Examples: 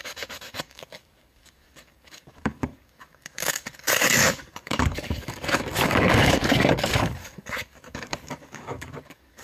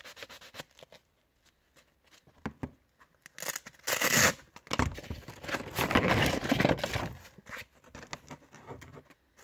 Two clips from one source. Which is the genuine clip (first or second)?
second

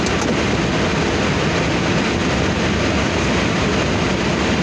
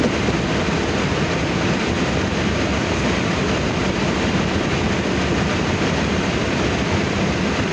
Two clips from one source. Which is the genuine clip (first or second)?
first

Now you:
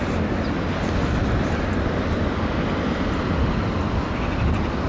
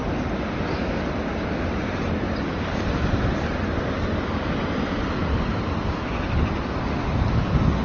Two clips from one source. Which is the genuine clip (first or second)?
first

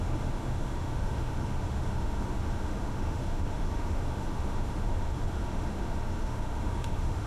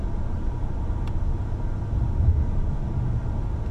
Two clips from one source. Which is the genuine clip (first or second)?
second